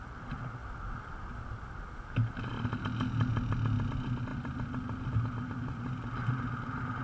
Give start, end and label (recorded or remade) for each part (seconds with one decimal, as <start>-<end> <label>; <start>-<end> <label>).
0.0-7.0 recorded